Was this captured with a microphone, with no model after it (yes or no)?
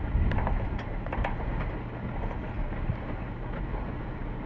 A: yes